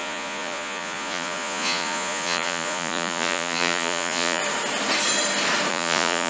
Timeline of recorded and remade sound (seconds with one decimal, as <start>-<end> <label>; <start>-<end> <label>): 0.0-4.4 remade; 4.4-5.7 recorded; 5.7-6.3 remade